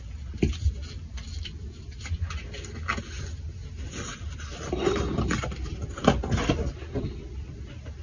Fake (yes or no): no